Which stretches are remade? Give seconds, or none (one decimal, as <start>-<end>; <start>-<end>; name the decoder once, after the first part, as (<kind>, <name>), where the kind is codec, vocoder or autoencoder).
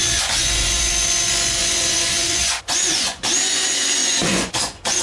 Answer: 0.0-5.0 (vocoder, Vocos)